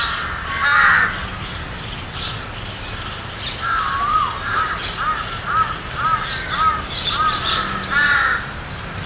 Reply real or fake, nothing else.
real